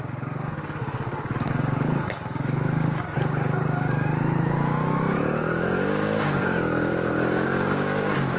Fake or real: fake